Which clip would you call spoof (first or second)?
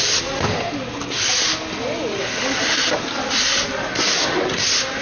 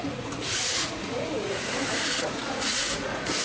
second